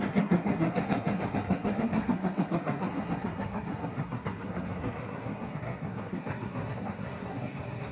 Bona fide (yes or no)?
no